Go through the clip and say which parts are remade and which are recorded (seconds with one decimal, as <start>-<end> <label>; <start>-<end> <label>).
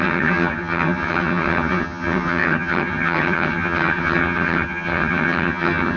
0.0-6.0 remade